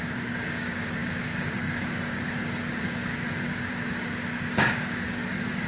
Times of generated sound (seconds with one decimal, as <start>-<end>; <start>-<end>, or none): 0.0-5.7